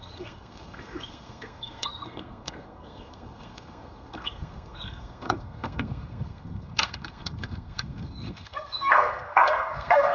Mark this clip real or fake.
fake